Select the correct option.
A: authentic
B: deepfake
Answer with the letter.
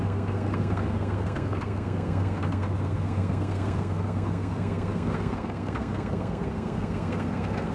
B